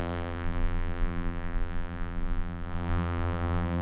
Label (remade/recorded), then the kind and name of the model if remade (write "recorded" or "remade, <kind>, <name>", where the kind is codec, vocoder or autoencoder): remade, vocoder, BigVGAN v2